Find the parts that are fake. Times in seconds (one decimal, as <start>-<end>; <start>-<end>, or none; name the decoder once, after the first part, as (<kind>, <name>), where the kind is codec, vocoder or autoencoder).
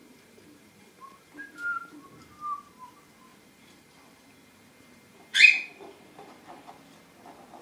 0.0-2.0 (vocoder, BigVGAN v2); 3.3-6.7